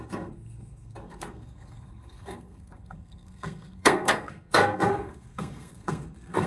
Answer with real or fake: fake